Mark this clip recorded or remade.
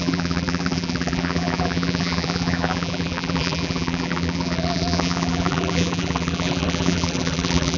remade